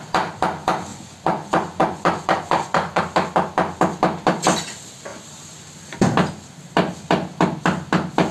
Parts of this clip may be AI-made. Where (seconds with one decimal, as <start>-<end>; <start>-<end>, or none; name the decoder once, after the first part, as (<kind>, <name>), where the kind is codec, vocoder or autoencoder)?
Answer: 0.9-3.0 (vocoder, Vocos)